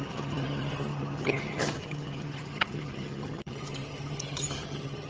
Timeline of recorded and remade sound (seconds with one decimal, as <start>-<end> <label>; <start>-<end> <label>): 0.0-5.1 remade